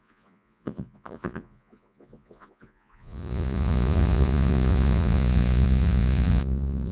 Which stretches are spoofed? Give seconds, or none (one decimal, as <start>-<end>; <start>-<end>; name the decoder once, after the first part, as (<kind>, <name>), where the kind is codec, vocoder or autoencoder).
0.0-6.9 (vocoder, Vocos)